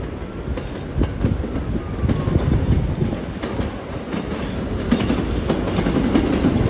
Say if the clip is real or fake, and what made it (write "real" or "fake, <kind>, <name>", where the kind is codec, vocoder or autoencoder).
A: real